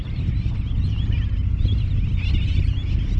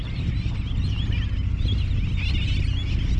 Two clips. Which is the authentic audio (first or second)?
second